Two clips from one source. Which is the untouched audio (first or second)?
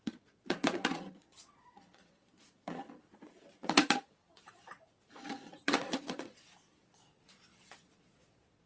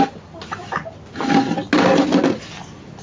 second